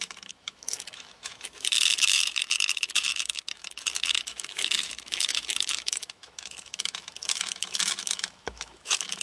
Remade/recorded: remade